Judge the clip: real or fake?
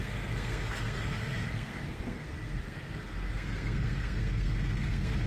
fake